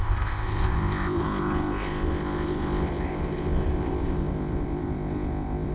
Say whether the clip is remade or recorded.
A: remade